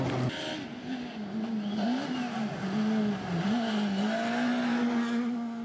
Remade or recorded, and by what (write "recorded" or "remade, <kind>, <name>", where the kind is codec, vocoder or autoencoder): recorded